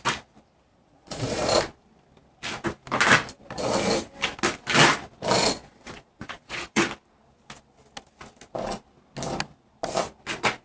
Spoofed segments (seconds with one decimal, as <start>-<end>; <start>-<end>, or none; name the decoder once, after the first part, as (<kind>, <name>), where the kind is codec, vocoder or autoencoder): 0.7-1.6 (vocoder, Vocos); 5.4-6.8